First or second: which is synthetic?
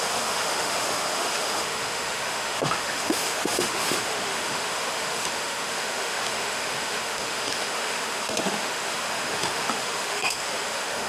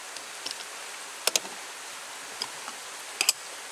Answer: first